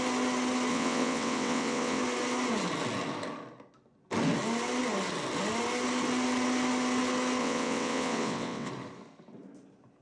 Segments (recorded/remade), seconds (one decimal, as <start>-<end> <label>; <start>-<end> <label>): 0.0-0.7 recorded; 0.7-2.0 remade; 2.0-7.4 recorded; 7.4-8.7 remade; 8.7-10.0 recorded